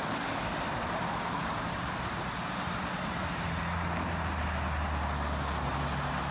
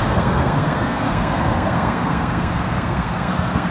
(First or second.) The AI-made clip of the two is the second